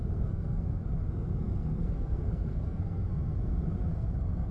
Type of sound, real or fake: fake